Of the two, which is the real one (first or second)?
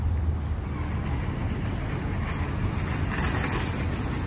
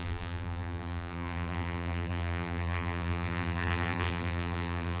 first